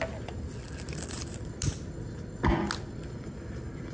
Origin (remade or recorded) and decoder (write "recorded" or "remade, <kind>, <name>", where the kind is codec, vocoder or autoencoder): recorded